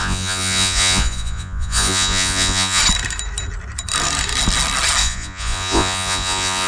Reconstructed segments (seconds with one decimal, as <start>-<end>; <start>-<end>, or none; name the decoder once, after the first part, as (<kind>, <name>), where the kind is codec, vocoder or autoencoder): 0.0-2.8 (vocoder, Vocos); 5.0-6.7